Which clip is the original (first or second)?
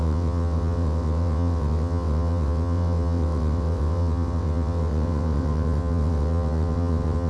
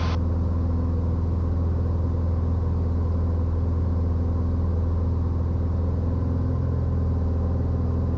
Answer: second